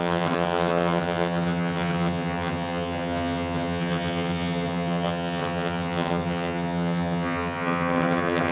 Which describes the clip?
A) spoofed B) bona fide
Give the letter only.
A